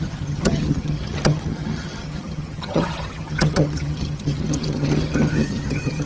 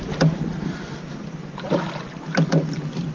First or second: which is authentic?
second